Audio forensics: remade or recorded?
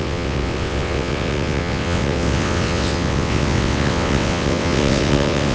remade